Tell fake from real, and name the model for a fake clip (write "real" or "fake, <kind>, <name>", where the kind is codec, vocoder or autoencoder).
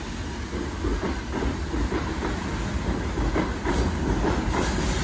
real